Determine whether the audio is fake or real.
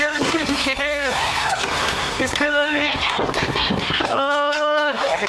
fake